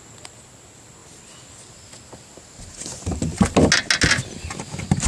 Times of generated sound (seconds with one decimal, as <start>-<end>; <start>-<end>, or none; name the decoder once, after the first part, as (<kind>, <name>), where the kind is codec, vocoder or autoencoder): none